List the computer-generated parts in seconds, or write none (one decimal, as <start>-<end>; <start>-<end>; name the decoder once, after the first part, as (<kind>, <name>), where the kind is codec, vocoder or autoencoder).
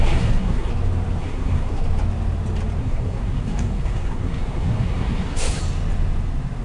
0.0-0.7 (codec, SNAC); 1.2-1.8; 2.8-5.6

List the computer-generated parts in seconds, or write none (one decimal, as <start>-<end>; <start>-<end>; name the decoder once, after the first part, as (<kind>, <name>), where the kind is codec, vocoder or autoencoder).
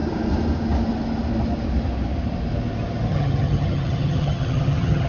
3.1-5.1 (vocoder, HiFi-GAN)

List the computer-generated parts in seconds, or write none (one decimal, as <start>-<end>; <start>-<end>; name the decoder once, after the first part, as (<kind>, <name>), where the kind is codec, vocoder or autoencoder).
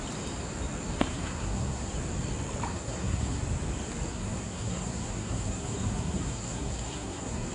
1.1-1.9 (codec, SNAC); 2.7-3.4; 4.1-7.5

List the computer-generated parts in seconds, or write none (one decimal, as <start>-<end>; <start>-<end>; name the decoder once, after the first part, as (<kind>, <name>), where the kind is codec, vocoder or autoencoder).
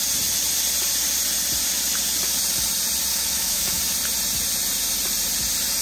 3.1-3.8 (autoencoder, DAC-VAE)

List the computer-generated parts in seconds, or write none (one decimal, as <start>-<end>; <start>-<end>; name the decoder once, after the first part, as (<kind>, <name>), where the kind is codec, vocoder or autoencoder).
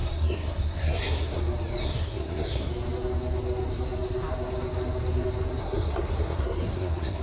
0.0-1.4 (codec, SNAC); 1.8-2.7; 5.6-7.2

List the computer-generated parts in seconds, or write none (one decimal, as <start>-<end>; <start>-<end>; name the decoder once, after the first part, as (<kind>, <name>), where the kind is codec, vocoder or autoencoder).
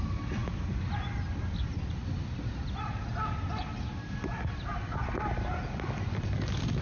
none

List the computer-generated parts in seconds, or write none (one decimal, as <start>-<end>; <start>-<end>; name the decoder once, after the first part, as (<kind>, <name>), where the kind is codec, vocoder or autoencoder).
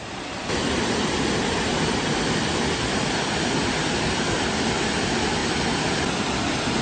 0.4-4.5 (vocoder, BigVGAN v2); 5.4-6.1